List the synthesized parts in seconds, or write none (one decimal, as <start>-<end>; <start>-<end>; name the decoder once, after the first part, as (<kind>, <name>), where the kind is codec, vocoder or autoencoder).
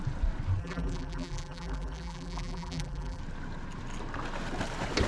0.6-3.2 (vocoder, BigVGAN v2)